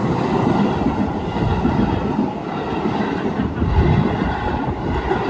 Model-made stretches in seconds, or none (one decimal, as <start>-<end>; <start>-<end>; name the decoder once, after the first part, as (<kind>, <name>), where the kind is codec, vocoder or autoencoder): 0.0-0.6 (vocoder, BigVGAN v2)